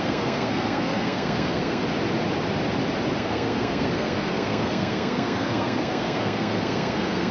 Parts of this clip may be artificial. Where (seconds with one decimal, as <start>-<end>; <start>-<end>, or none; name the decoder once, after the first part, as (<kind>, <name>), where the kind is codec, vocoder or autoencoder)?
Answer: 0.0-1.8 (codec, SNAC); 3.2-7.3